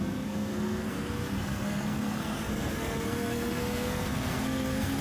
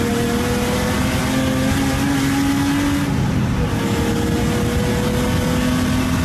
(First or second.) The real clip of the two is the second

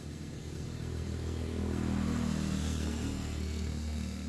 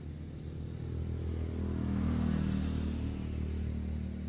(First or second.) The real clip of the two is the second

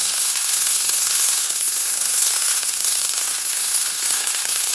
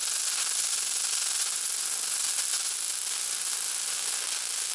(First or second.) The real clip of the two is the second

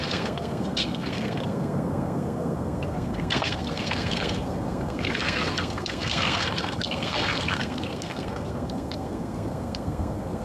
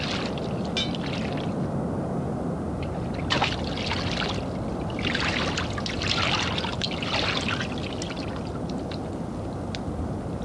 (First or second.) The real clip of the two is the second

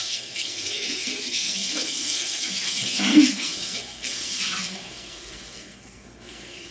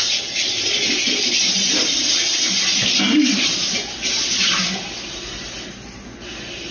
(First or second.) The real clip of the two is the second